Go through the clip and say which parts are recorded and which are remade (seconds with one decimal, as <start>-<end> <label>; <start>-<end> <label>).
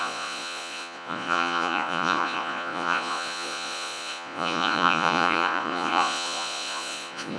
0.0-7.4 remade